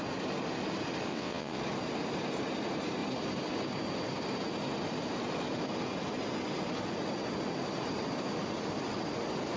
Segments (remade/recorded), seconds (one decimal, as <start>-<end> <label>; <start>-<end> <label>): 0.0-1.1 recorded; 1.1-1.6 remade; 1.6-9.6 recorded